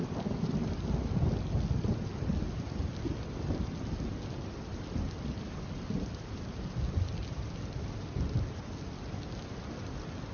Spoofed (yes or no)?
no